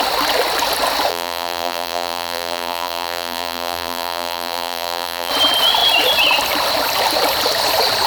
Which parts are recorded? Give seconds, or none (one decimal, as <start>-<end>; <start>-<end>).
0.0-1.1; 5.3-8.1